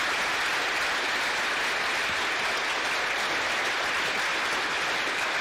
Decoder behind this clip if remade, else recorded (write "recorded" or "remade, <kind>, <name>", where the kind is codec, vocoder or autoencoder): recorded